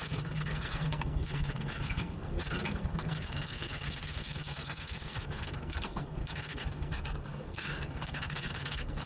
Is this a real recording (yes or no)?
no